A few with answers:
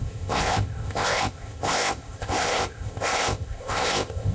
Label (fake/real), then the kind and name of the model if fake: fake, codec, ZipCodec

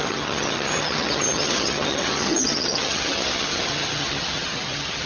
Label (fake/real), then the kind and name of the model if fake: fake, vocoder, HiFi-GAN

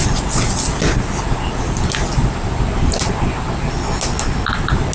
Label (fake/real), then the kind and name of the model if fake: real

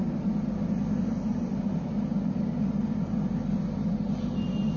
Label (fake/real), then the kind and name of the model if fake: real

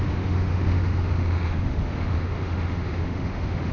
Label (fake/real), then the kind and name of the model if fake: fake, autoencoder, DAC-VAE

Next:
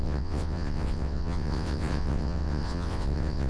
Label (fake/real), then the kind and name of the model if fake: fake, vocoder, WaveNeXt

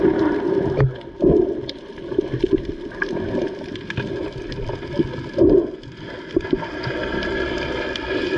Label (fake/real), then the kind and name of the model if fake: real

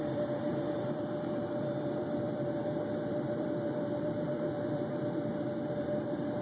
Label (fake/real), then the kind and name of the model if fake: fake, vocoder, BigVGAN v2